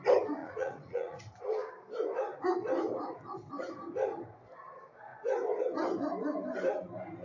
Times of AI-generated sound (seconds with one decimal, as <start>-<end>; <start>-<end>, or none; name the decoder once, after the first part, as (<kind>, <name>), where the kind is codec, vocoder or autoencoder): 0.4-1.2 (vocoder, Vocos)